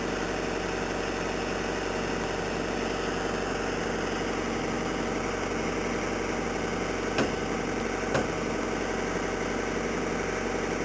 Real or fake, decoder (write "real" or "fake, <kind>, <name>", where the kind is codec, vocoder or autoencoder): real